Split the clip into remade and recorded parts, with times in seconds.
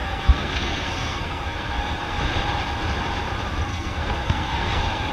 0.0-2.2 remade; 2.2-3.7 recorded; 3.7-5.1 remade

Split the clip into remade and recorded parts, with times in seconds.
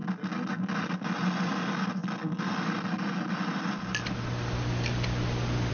0.0-5.7 recorded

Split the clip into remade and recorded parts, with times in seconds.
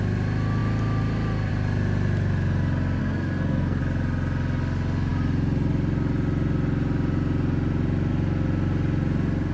0.0-3.0 recorded; 3.0-3.8 remade; 3.8-9.5 recorded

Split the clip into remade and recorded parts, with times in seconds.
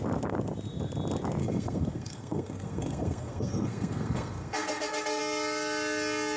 0.0-1.4 recorded; 1.4-5.2 remade; 5.2-6.4 recorded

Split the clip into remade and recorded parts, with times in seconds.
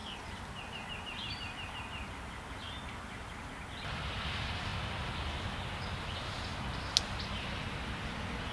0.0-8.5 recorded